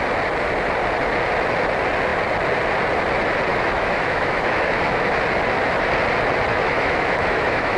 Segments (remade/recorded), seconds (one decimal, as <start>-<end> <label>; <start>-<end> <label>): 0.0-3.5 recorded; 3.5-5.1 remade; 5.1-6.5 recorded; 6.5-7.8 remade